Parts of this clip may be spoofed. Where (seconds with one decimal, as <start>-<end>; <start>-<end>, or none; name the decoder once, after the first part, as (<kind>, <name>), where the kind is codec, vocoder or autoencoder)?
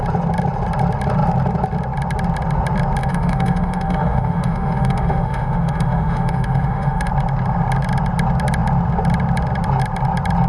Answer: 3.0-7.1 (autoencoder, DAC-VAE)